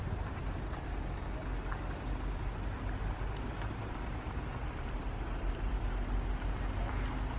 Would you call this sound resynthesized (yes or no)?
no